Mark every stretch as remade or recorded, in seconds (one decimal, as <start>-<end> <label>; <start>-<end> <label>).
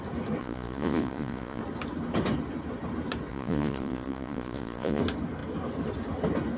0.0-0.4 recorded; 0.4-1.6 remade; 1.6-3.3 recorded; 3.3-5.0 remade; 5.0-6.6 recorded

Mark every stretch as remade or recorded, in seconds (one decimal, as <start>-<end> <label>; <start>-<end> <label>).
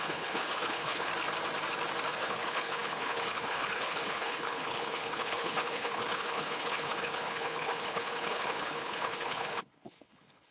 0.0-1.1 remade; 1.1-2.1 recorded; 2.1-10.5 remade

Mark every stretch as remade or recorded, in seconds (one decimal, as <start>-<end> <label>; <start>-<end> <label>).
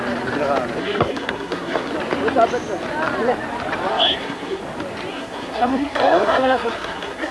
0.0-0.8 recorded; 0.8-1.9 remade; 1.9-3.9 recorded; 3.9-4.6 remade; 4.6-5.1 recorded; 5.1-7.3 remade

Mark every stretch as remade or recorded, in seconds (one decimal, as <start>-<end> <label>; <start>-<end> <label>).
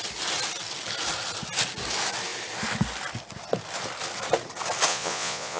0.0-4.9 recorded; 4.9-5.6 remade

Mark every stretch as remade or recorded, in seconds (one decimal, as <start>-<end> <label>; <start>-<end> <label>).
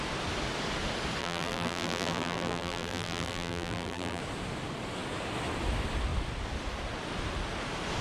0.0-1.2 recorded; 1.2-4.2 remade; 4.2-8.0 recorded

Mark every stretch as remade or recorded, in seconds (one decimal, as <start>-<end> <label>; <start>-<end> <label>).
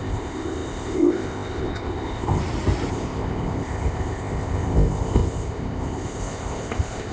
0.0-2.4 remade; 2.4-2.9 recorded; 2.9-7.1 remade